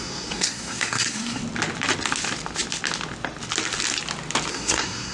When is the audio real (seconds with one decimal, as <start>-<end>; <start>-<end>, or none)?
1.4-4.5